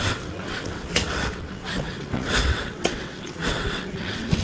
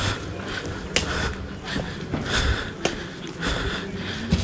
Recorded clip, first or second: second